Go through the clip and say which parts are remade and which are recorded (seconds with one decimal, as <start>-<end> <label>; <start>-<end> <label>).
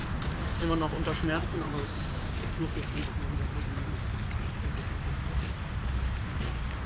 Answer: 0.0-3.0 remade; 3.0-6.2 recorded; 6.2-6.9 remade